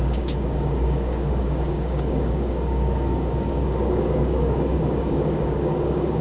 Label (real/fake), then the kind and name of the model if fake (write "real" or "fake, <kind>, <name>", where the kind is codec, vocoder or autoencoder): fake, codec, DAC